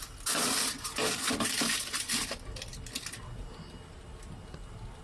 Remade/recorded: recorded